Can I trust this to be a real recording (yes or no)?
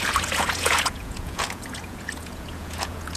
no